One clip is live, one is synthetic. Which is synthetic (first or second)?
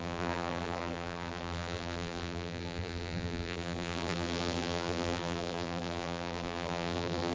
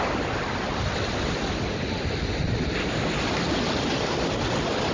first